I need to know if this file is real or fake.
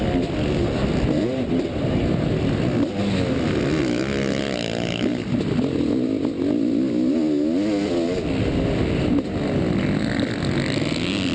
real